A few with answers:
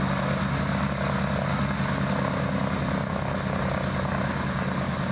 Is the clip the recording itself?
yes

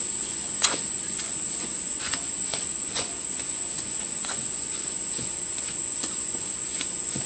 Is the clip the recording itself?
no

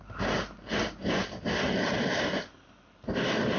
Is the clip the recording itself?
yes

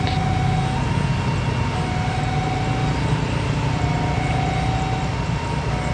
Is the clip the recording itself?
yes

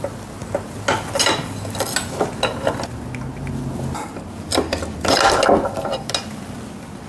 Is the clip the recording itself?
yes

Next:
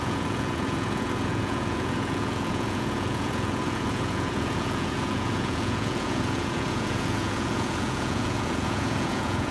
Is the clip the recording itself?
no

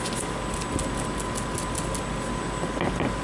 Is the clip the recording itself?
yes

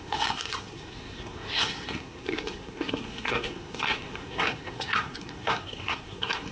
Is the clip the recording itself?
no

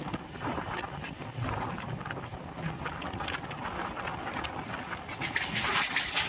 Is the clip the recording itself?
yes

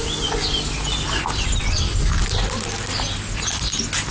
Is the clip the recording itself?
yes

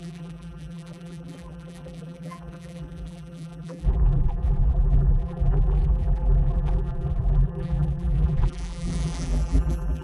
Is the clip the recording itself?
no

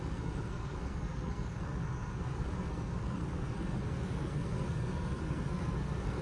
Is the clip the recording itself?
no